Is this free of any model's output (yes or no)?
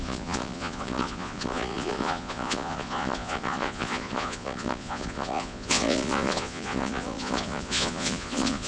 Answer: no